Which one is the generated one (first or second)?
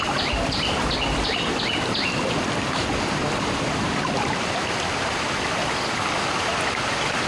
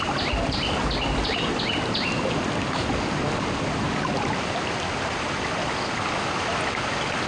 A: first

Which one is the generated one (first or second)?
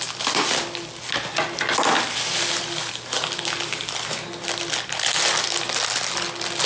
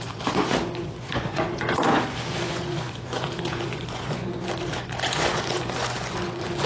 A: second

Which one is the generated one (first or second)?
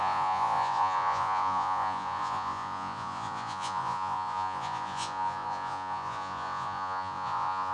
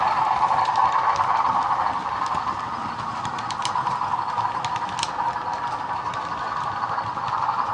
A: first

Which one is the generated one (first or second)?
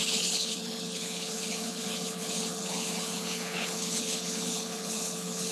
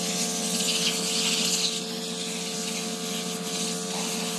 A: first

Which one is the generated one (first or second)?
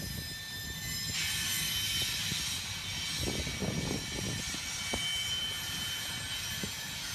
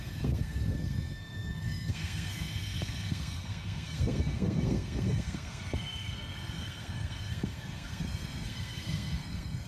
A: second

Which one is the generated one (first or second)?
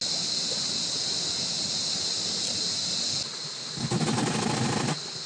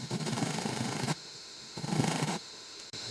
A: second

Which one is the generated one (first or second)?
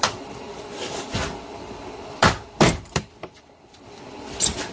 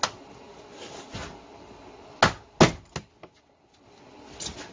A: first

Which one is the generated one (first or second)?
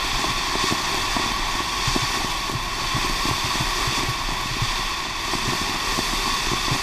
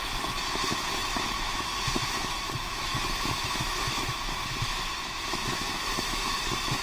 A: second